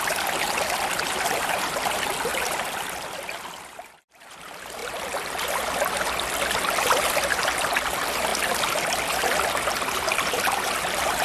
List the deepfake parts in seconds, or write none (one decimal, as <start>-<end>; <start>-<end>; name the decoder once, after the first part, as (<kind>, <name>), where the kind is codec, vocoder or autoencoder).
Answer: 0.0-4.8 (vocoder, BigVGAN v2); 7.9-8.3; 9.8-11.2